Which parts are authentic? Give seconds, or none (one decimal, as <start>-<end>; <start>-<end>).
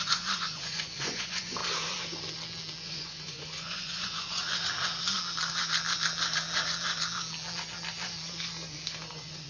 1.6-2.8; 4.4-9.1